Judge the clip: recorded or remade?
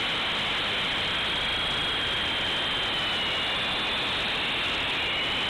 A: recorded